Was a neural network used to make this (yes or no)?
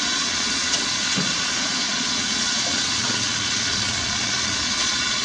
yes